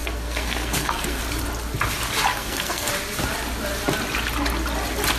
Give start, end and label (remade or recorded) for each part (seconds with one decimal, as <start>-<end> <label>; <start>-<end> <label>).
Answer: 0.0-1.2 remade; 1.2-2.3 recorded; 2.3-2.9 remade; 2.9-5.2 recorded